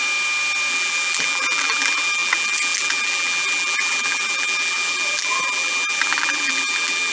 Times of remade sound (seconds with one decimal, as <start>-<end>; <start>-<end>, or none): 0.7-7.1